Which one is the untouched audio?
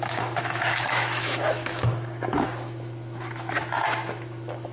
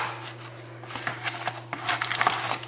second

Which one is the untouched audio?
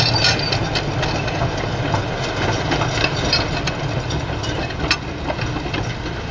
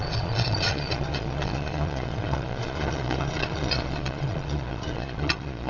first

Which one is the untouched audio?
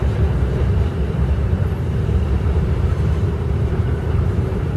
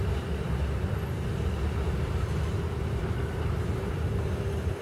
second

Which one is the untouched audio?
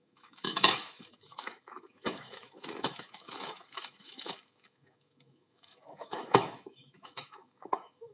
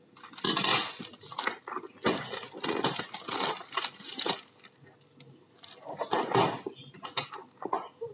second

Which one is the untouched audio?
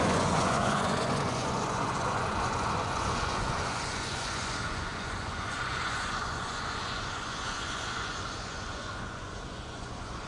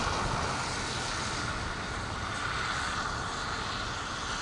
second